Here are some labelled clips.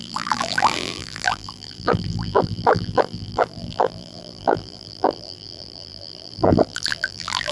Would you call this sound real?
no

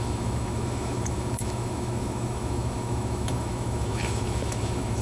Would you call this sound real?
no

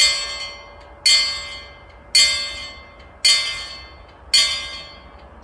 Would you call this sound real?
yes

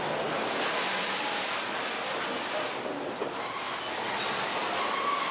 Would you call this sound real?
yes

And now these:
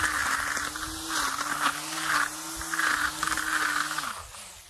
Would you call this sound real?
yes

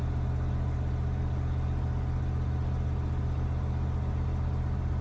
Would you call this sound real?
yes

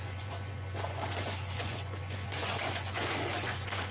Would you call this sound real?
no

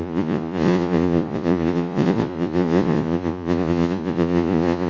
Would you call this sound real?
no